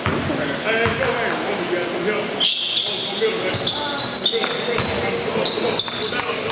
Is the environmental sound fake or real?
real